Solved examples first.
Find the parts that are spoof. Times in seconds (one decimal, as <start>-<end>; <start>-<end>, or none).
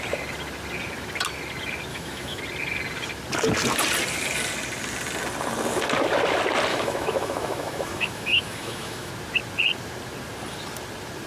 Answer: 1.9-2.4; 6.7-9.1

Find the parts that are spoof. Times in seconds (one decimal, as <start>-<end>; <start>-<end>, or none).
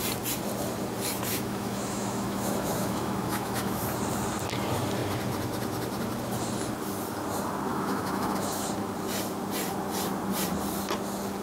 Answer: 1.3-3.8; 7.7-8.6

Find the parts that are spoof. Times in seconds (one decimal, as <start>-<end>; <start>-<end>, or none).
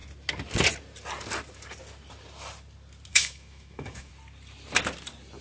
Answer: 3.1-4.1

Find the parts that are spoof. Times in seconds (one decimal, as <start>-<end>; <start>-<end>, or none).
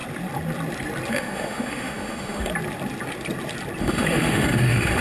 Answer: 1.1-2.5; 3.8-5.0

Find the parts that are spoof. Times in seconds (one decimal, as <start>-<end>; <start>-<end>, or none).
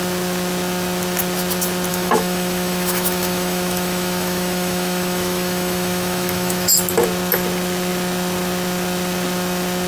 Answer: 1.9-6.7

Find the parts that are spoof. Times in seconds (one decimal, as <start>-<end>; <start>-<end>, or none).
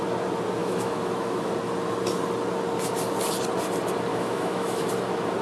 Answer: 0.6-1.5; 4.1-4.9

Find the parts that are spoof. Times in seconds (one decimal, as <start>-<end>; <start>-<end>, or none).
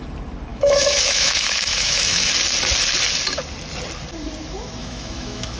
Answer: 0.5-2.3; 4.8-5.6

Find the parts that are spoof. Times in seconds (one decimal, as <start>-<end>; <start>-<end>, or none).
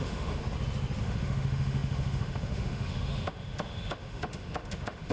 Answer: 0.0-0.4; 1.0-5.1